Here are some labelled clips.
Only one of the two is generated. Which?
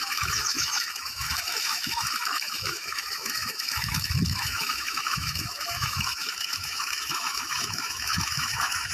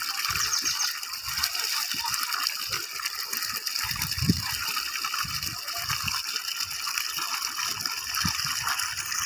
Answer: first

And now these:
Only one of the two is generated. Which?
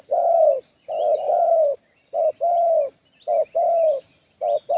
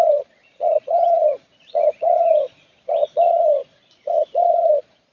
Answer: second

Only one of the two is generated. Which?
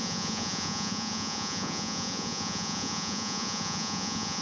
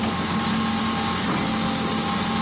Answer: first